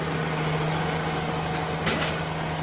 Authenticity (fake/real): real